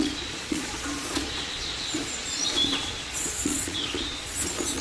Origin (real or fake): fake